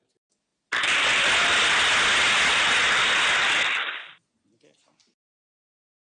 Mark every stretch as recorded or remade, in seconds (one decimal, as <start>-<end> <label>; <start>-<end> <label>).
0.0-6.1 recorded